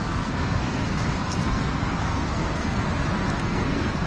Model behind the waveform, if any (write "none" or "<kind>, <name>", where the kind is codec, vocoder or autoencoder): codec, SNAC